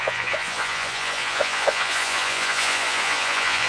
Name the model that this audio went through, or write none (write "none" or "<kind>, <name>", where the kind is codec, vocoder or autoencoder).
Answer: vocoder, Vocos